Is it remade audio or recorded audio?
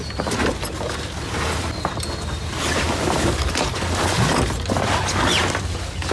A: recorded